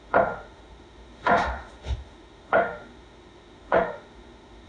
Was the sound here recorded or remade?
remade